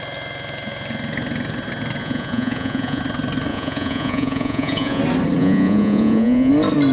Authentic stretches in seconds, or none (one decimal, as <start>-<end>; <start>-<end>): 0.0-2.0; 3.0-3.5; 5.0-5.4; 6.5-6.9

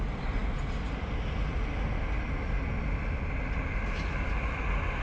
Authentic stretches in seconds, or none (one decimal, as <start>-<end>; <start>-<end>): 0.0-5.0

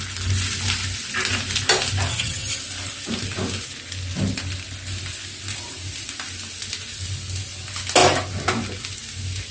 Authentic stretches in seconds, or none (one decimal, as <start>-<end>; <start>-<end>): 0.0-2.1; 2.6-9.5

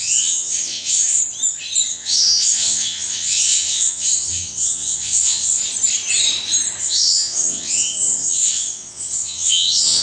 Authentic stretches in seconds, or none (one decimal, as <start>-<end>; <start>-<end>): 1.2-1.9; 5.6-6.8

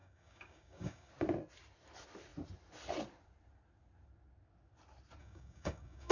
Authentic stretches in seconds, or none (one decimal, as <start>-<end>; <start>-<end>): 1.1-5.2

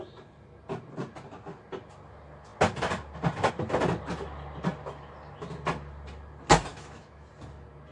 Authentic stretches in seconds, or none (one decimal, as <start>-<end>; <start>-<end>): 0.0-6.7; 7.3-7.9

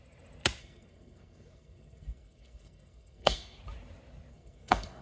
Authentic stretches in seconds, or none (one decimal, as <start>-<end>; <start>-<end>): 0.0-0.6; 3.6-4.3